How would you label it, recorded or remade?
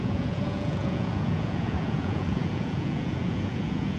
remade